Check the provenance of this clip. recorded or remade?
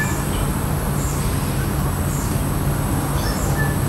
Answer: recorded